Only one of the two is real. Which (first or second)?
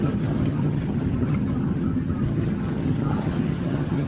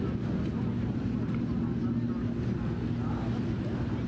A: second